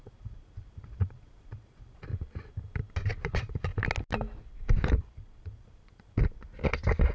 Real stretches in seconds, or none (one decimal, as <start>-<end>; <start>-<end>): 2.1-3.2; 3.7-5.0; 6.5-7.1